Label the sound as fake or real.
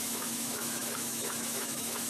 fake